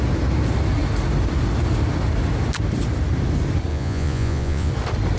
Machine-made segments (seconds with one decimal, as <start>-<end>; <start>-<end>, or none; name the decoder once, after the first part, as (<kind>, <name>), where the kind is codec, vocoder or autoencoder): 3.7-4.7 (vocoder, Vocos)